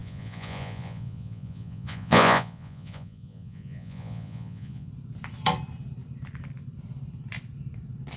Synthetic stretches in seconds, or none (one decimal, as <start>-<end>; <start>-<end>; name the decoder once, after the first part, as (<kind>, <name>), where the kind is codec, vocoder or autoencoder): 0.0-4.9 (vocoder, Vocos)